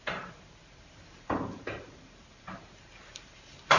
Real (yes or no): no